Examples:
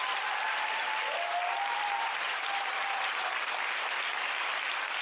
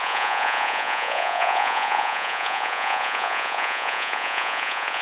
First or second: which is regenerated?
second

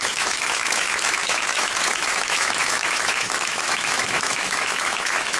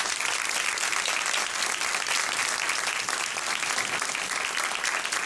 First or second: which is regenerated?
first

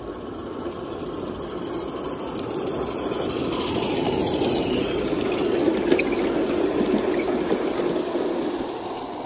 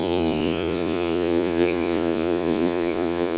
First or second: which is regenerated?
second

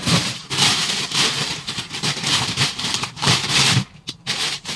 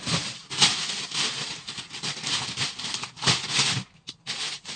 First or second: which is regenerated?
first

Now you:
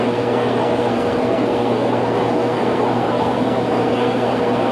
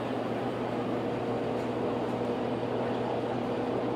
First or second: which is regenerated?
first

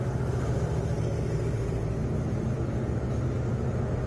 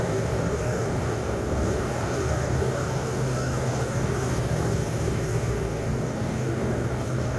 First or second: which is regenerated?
second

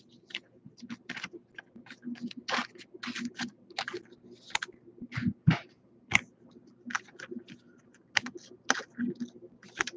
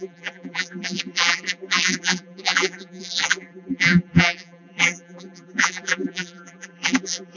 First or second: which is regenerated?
second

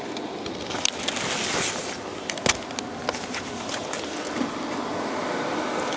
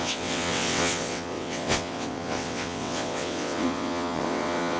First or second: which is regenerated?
second